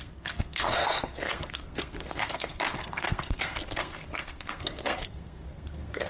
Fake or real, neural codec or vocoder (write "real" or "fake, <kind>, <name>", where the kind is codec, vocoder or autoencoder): fake, codec, SNAC